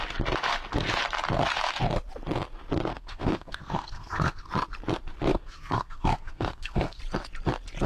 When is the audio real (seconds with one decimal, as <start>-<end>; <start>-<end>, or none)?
0.0-2.9; 4.5-5.3; 7.0-7.9